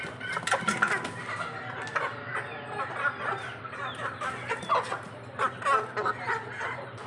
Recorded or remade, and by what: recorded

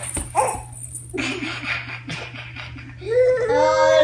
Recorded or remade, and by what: recorded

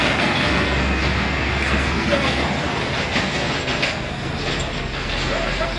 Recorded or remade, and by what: remade, codec, SNAC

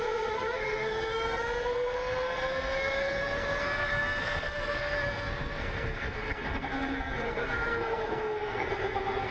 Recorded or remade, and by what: remade, codec, SNAC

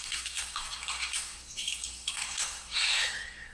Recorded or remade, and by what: remade, codec, SNAC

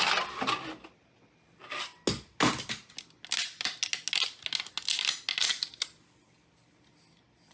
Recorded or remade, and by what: recorded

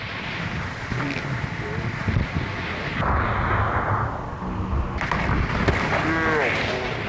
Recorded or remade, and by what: recorded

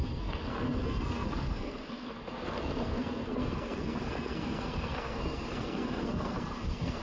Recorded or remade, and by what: remade, codec, SNAC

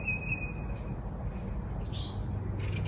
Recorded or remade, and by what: recorded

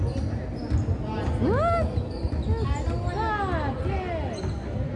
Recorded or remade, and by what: recorded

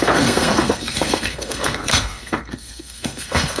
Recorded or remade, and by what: remade, codec, SNAC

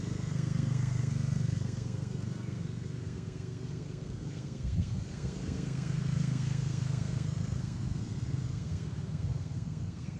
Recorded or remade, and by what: remade, codec, SNAC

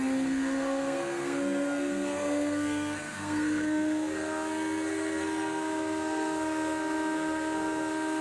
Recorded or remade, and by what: remade, codec, SNAC